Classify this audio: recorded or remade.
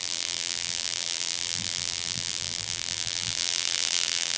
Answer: remade